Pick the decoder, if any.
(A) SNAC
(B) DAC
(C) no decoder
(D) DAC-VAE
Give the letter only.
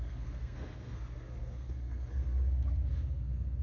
A